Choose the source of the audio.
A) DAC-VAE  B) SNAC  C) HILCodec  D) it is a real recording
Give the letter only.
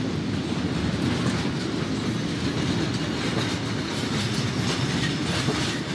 D